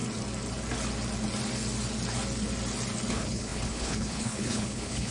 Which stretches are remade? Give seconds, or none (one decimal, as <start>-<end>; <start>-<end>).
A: 3.1-5.1